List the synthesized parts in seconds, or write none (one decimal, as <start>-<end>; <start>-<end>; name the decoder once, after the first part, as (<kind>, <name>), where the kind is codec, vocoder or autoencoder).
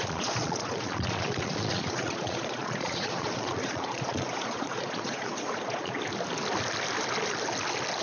0.0-6.0 (vocoder, Vocos)